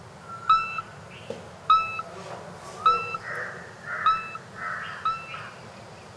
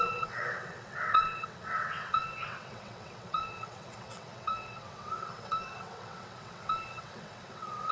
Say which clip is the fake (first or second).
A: second